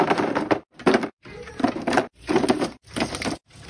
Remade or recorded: remade